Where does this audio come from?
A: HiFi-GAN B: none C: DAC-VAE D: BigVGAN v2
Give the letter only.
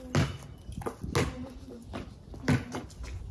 B